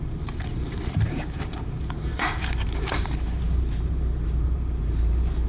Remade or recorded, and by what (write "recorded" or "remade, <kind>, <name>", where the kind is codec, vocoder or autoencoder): remade, vocoder, BigVGAN v2